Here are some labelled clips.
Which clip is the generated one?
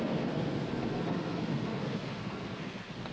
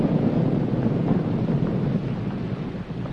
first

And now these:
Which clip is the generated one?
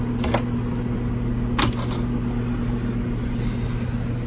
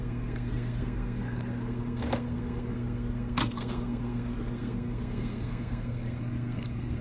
second